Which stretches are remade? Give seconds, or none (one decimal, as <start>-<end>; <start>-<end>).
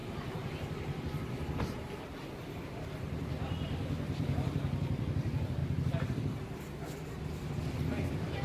0.0-8.4